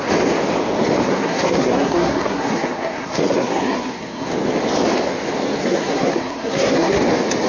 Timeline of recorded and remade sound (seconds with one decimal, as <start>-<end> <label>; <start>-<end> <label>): 0.0-1.0 recorded; 1.0-4.3 remade; 4.3-5.6 recorded; 5.6-7.0 remade; 7.0-7.5 recorded